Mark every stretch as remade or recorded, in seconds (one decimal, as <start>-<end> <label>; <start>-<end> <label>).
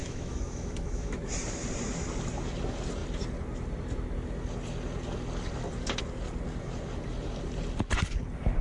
0.0-1.2 remade; 1.2-8.6 recorded